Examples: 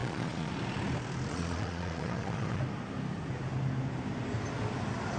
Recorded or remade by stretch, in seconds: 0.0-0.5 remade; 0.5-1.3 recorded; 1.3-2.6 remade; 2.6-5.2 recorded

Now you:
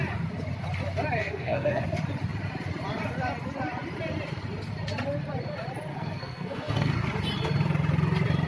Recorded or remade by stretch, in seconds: 0.0-1.2 recorded; 1.2-1.8 remade; 1.8-5.9 recorded; 5.9-6.9 remade; 6.9-8.5 recorded

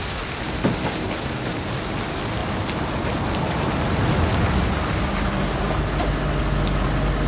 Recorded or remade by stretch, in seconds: 0.0-7.3 recorded